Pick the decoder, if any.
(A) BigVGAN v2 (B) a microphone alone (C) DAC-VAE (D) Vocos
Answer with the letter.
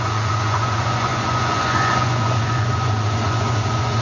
D